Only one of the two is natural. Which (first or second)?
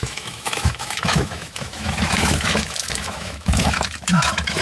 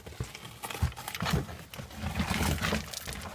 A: second